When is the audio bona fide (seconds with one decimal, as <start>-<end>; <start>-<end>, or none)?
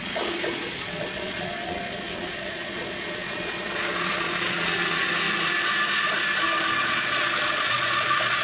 5.1-6.8